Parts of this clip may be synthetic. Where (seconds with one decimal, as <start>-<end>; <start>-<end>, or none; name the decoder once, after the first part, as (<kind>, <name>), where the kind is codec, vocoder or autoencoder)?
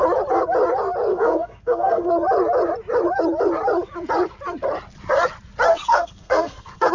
1.1-2.1 (codec, SNAC); 5.7-6.9